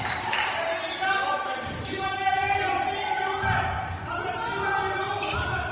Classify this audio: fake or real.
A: real